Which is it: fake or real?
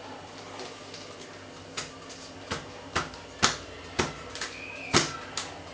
real